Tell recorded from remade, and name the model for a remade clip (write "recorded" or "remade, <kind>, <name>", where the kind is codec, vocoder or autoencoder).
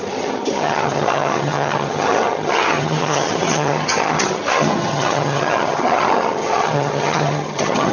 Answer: remade, vocoder, HiFi-GAN